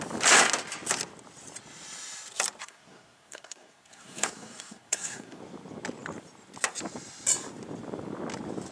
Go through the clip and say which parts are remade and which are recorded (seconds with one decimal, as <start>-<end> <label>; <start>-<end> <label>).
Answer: 0.0-2.6 recorded; 2.6-5.4 remade; 5.4-8.7 recorded